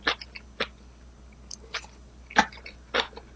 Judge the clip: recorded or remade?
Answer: recorded